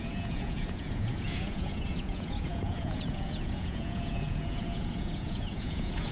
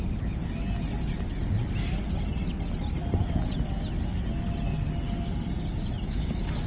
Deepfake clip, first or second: first